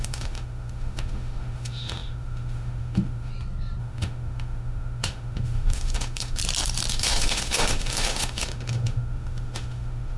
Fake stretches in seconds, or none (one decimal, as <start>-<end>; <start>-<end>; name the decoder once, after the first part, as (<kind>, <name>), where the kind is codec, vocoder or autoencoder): 0.0-3.3 (autoencoder, DAC-VAE); 3.8-6.4; 6.9-10.2